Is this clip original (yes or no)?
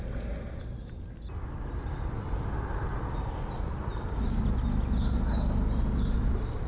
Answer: yes